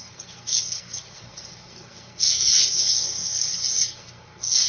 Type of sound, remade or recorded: remade